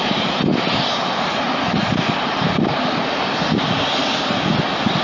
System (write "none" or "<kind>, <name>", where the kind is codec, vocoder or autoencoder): none